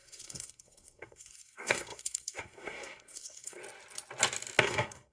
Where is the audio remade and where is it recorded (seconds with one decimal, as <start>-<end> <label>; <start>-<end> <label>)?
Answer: 0.0-3.6 remade; 3.6-4.6 recorded; 4.6-5.1 remade